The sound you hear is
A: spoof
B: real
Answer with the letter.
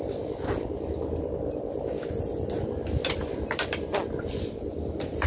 B